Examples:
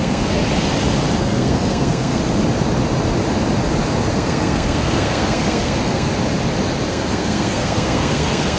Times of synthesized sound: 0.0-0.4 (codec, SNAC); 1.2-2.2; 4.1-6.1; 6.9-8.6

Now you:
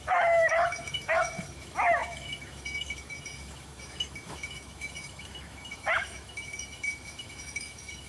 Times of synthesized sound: 0.0-8.1 (autoencoder, DAC-VAE)